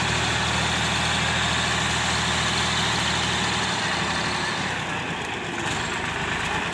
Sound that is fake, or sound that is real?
real